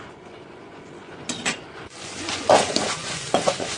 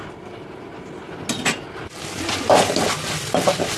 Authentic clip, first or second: second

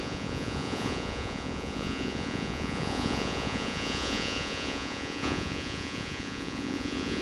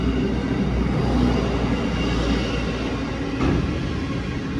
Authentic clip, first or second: second